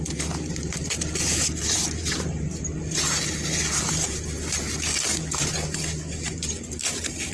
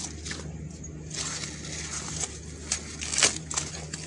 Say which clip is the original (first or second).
second